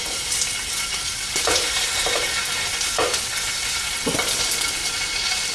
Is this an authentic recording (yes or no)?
yes